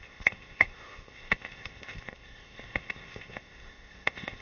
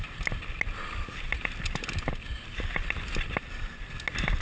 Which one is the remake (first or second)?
first